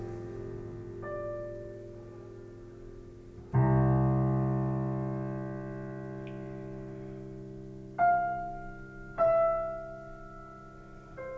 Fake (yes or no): no